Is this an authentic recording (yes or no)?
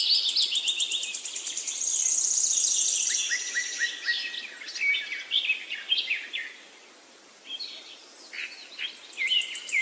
yes